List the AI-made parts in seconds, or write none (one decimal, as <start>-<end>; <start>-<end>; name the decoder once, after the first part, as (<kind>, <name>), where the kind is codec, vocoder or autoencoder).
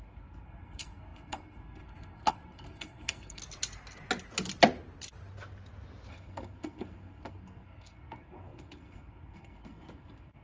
0.0-3.4 (codec, SNAC); 6.1-10.4